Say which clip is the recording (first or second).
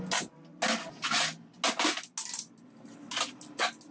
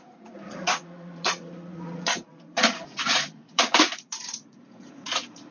first